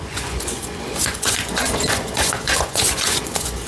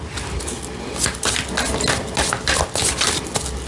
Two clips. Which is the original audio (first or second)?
second